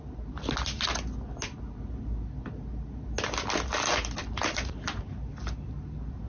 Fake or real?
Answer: real